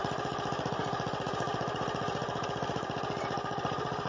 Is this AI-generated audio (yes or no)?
yes